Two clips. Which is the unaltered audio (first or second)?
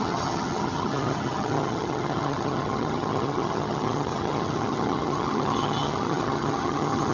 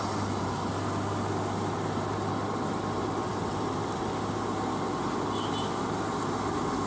second